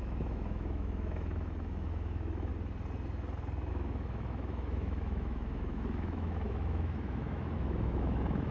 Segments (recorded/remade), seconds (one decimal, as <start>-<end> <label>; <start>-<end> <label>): 0.0-2.5 remade; 2.5-3.7 recorded; 3.7-8.5 remade